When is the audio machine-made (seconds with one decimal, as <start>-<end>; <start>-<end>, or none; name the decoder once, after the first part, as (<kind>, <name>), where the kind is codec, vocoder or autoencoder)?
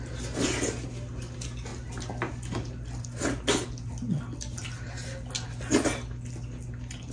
none